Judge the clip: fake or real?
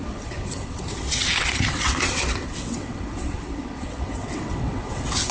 fake